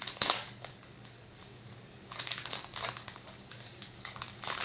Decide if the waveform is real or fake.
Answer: fake